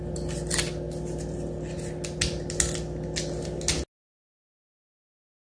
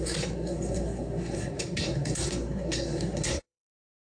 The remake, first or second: second